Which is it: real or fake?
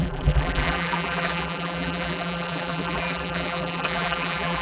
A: fake